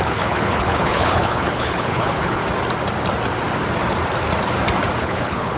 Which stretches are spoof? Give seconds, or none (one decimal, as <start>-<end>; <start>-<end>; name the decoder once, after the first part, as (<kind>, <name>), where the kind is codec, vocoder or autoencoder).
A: 0.0-2.4 (codec, HILCodec); 5.0-5.6